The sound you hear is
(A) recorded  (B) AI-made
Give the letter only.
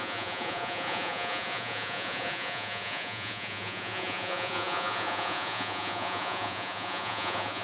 B